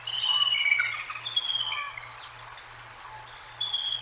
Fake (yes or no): no